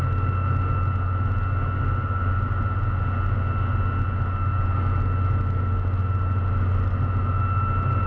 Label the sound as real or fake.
real